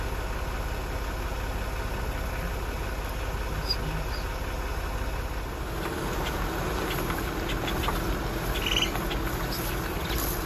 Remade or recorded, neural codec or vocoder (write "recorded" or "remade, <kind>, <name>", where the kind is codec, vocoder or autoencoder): recorded